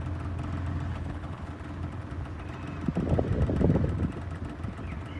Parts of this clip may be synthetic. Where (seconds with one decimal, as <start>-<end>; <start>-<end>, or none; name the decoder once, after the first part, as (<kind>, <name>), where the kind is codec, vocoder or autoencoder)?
0.9-1.5 (codec, HILCodec)